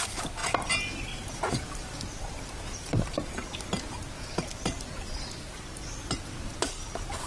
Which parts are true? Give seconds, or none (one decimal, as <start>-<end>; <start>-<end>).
0.0-7.3